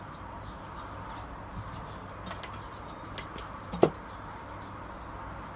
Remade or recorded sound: recorded